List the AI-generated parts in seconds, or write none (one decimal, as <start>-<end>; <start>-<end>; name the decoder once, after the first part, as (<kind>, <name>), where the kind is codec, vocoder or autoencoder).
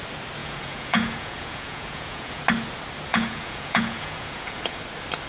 0.4-2.4 (vocoder, Vocos); 3.1-4.8